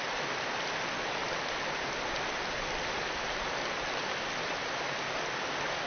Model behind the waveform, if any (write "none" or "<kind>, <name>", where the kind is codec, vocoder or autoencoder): none